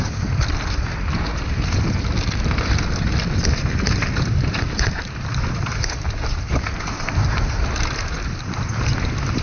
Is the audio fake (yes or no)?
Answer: no